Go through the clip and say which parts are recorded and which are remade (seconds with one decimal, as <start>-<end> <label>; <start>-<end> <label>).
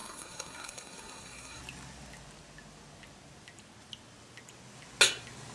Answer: 0.0-1.6 remade; 1.6-5.5 recorded